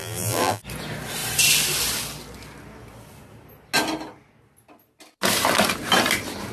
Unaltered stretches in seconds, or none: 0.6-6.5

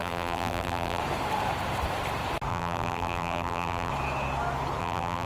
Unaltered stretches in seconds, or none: 1.0-2.5; 3.9-4.8

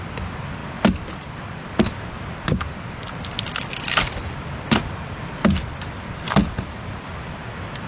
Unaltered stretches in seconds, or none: 0.6-4.3; 5.6-7.0

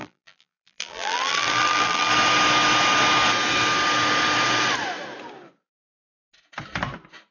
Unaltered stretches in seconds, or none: 2.1-7.3

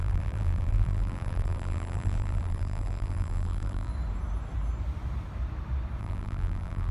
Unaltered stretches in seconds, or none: 3.9-6.0

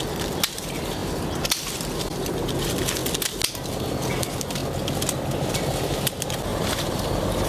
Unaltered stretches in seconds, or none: 0.0-6.5; 7.0-7.5

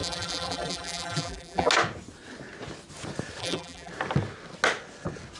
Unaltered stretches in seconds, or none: 1.7-3.4; 3.9-5.4

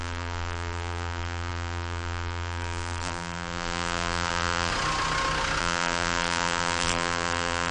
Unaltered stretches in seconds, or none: 4.7-5.6